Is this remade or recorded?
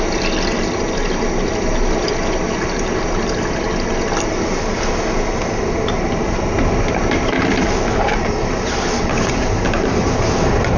recorded